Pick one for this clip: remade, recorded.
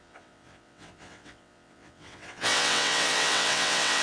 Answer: remade